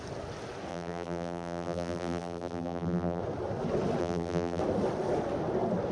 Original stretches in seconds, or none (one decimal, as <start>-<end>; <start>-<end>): 0.0-0.7; 3.2-4.0; 4.6-5.9